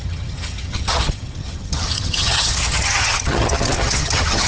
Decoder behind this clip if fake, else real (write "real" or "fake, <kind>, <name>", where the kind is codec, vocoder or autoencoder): fake, vocoder, HiFi-GAN